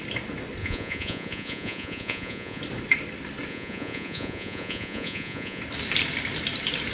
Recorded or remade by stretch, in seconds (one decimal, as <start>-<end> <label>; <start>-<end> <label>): 0.0-0.6 recorded; 0.6-2.6 remade; 2.6-3.5 recorded; 3.5-5.6 remade; 5.6-6.9 recorded